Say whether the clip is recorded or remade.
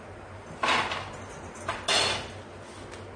recorded